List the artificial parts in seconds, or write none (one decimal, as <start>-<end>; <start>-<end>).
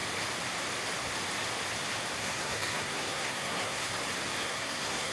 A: 2.2-3.9; 4.4-5.1